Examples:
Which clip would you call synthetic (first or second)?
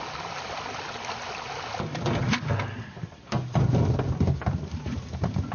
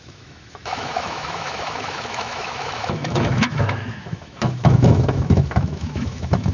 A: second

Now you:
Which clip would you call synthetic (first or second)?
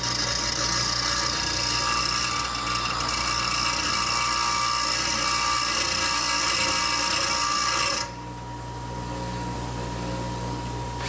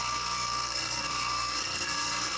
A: second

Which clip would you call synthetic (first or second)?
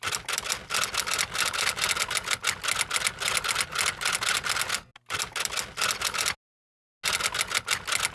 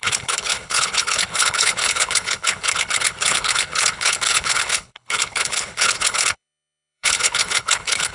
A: second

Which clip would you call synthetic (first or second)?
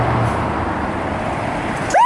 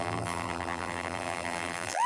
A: second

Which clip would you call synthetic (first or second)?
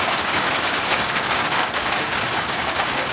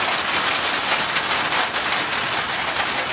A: first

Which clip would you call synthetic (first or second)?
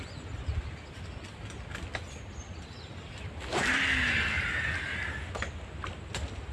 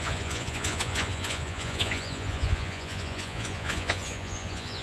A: second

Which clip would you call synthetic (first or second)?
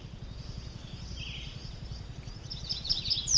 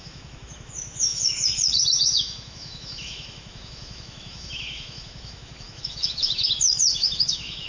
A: second